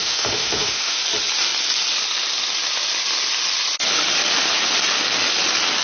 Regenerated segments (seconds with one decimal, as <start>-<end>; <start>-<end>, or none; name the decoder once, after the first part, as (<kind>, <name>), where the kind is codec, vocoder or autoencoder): 0.0-1.0 (autoencoder, DAC-VAE)